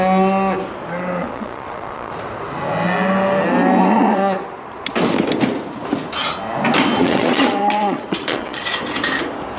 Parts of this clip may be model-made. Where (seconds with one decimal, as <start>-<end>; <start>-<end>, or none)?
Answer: 1.2-2.1; 3.8-4.4; 7.0-8.6

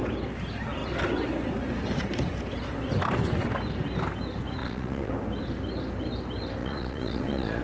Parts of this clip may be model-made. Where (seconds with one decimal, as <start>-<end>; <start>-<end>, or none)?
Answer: 4.6-5.1; 6.6-7.6